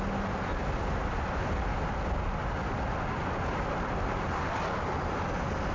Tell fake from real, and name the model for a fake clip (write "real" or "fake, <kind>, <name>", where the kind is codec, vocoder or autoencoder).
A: real